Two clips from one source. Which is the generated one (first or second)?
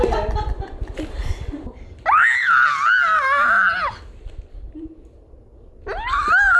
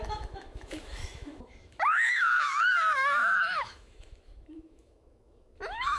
second